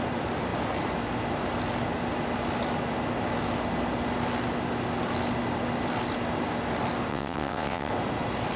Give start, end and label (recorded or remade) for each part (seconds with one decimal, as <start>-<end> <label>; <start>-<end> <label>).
0.0-7.1 recorded; 7.1-7.9 remade; 7.9-8.6 recorded